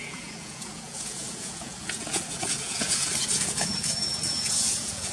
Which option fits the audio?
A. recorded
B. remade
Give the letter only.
B